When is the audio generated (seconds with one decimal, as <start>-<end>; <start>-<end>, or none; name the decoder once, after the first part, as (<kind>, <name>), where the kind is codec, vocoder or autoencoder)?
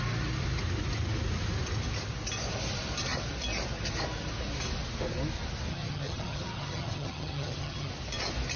5.7-7.9 (vocoder, HiFi-GAN)